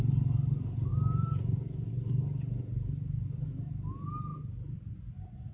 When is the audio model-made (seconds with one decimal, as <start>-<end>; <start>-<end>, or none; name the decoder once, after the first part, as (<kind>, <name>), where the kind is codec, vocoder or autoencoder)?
4.3-4.8 (vocoder, BigVGAN v2)